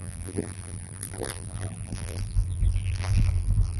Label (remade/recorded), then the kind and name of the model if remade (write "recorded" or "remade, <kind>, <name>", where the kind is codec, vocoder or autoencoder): remade, vocoder, BigVGAN v2